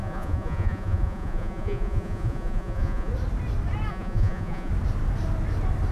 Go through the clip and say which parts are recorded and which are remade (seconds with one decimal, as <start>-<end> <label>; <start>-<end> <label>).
0.0-3.1 remade; 3.1-3.9 recorded; 3.9-4.7 remade; 4.7-5.9 recorded